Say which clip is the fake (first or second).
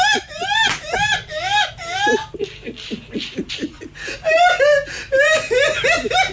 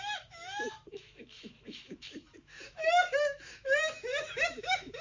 second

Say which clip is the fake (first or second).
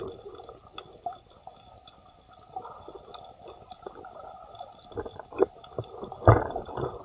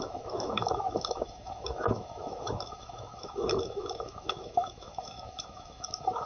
second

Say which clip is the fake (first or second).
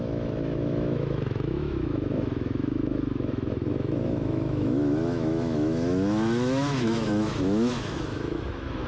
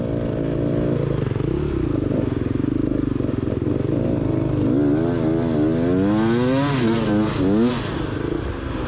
first